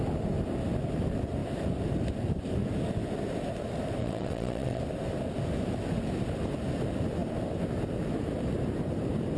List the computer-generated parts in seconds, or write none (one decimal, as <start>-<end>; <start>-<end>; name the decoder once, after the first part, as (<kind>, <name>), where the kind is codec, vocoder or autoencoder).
4.0-4.8 (vocoder, WaveNeXt)